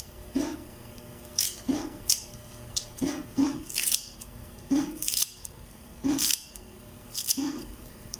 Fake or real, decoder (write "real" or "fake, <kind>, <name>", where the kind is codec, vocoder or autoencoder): fake, codec, SNAC